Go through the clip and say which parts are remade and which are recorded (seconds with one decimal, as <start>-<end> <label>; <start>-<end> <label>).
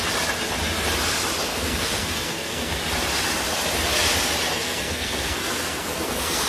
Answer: 0.0-1.5 recorded; 1.5-2.8 remade; 2.8-4.5 recorded; 4.5-6.5 remade